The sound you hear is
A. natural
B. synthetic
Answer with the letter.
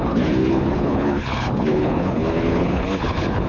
B